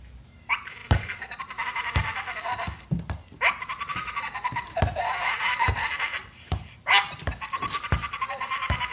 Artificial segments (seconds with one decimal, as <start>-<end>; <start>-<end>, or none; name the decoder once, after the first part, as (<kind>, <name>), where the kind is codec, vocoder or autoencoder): none